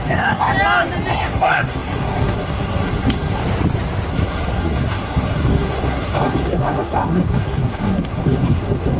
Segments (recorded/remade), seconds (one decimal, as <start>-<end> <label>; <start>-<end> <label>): 0.0-0.5 remade; 0.5-1.1 recorded; 1.1-3.4 remade; 3.4-4.1 recorded; 4.1-9.0 remade